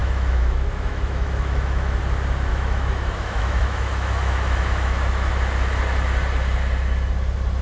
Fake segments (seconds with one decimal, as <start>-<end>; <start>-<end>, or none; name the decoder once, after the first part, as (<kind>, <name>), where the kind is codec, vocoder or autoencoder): 0.0-2.0 (autoencoder, DAC-VAE); 2.5-5.3